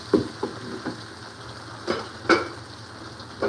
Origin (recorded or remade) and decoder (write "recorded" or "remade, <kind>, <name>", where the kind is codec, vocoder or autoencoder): recorded